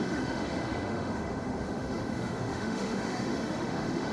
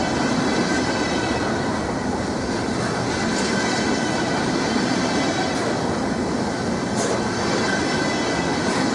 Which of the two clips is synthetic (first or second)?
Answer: first